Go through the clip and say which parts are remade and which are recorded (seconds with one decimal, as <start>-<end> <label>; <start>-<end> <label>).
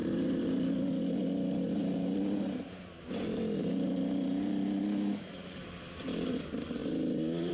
0.0-0.7 remade; 0.7-1.8 recorded; 1.8-6.1 remade; 6.1-7.5 recorded